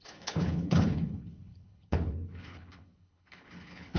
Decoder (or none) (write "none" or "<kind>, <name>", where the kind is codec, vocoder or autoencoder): codec, HILCodec